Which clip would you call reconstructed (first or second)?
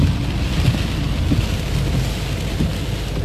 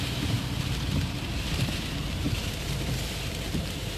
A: second